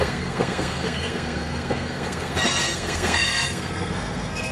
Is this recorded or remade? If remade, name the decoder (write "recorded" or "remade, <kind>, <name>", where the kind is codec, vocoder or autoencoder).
remade, codec, SNAC